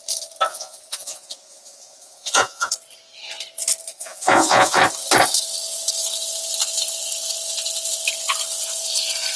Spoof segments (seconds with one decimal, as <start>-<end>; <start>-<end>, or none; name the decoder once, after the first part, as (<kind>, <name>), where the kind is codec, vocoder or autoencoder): 0.5-2.7 (vocoder, Vocos); 3.9-4.8